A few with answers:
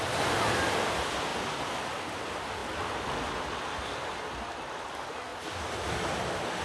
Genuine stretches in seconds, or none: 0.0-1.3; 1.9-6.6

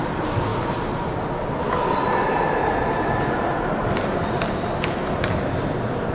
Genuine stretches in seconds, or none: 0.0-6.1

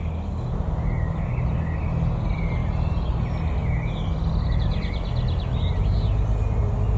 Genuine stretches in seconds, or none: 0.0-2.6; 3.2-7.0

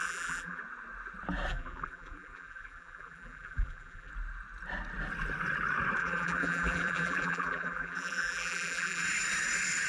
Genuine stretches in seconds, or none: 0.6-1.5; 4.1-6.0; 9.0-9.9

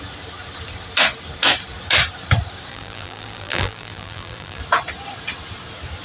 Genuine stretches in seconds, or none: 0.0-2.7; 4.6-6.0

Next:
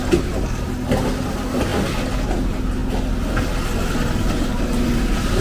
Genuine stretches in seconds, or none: 0.0-5.4

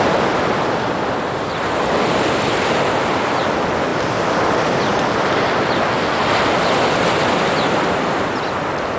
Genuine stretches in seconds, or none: 0.0-9.0

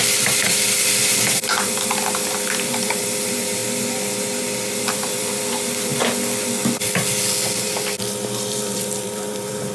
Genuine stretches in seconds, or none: 3.6-4.7; 5.9-7.6